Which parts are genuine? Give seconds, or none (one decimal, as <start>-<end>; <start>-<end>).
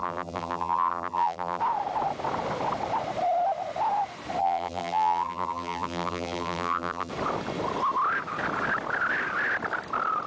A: 1.6-4.4; 7.1-10.3